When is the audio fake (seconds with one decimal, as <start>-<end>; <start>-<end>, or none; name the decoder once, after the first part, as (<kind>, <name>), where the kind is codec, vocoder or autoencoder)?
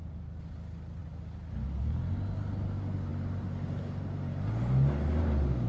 none